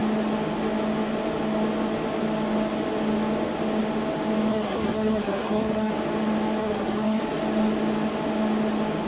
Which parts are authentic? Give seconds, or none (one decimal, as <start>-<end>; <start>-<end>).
0.0-4.5; 5.9-6.6; 7.2-9.1